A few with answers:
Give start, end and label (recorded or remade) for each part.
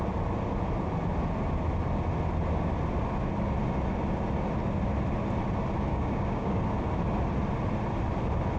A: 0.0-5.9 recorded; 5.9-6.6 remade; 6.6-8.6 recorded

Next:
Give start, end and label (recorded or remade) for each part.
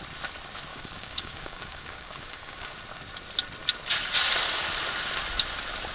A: 0.0-0.7 recorded; 0.7-2.8 remade; 2.8-5.9 recorded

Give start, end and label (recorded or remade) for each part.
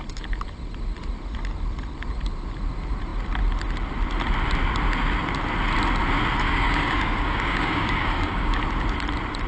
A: 0.0-6.4 recorded; 6.4-8.6 remade; 8.6-9.5 recorded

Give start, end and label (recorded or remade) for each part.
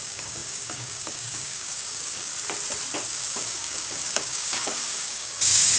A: 0.0-2.3 remade; 2.3-3.1 recorded; 3.1-5.8 remade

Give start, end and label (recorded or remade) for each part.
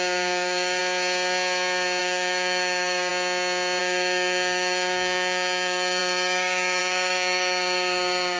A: 0.0-0.8 remade; 0.8-2.0 recorded; 2.0-3.1 remade; 3.1-3.8 recorded; 3.8-8.4 remade